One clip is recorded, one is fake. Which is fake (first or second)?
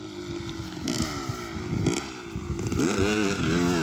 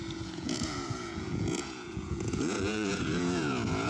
second